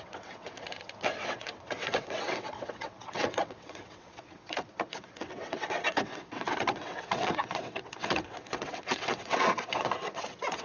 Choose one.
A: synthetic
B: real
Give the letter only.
A